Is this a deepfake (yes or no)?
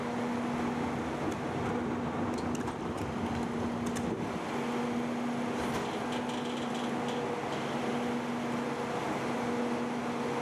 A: no